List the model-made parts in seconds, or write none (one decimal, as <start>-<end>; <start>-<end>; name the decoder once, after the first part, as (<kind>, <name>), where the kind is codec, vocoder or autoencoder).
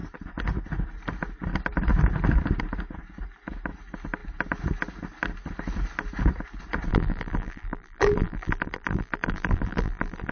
6.9-10.3 (vocoder, BigVGAN v2)